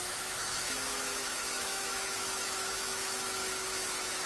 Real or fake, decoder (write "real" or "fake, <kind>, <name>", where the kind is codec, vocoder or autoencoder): fake, autoencoder, DAC-VAE